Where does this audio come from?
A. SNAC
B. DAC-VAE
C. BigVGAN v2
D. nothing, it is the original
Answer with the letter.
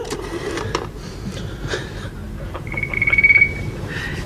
C